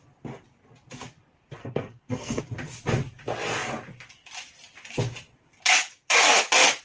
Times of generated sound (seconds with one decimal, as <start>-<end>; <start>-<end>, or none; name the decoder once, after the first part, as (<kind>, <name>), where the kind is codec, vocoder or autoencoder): 1.6-2.4 (codec, SNAC)